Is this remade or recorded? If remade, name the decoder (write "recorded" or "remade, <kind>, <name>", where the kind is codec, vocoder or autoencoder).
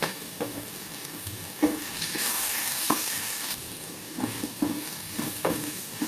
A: remade, codec, DAC